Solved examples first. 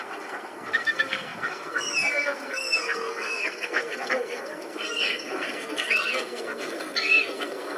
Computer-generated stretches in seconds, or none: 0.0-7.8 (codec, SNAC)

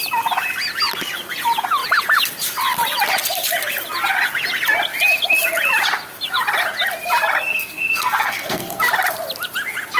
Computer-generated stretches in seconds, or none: 7.5-8.8 (codec, SNAC)

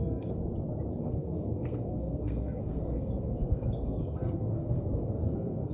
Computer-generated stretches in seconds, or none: 0.0-0.4 (codec, SNAC); 1.0-5.7

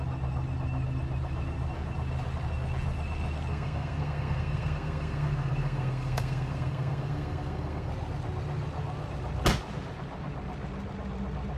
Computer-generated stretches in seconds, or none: 3.5-7.9 (codec, SNAC)

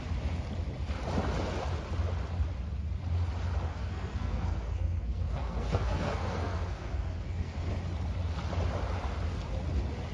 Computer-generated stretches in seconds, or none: 3.7-7.7 (codec, SNAC)

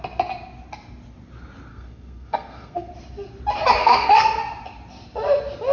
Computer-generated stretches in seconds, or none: 1.7-2.9 (codec, SNAC); 3.8-4.4

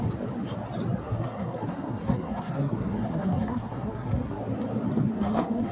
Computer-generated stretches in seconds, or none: 1.0-4.4 (codec, SNAC); 4.9-5.7